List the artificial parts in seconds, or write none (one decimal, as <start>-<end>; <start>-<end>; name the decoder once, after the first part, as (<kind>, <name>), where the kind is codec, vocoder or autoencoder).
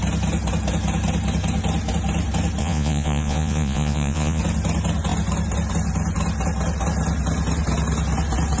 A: 2.6-4.4 (vocoder, Vocos)